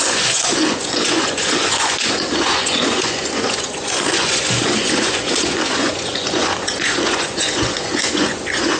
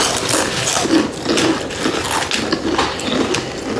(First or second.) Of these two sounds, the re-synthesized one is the first